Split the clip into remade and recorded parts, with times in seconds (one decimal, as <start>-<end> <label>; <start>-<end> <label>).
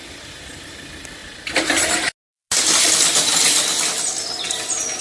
0.0-5.0 recorded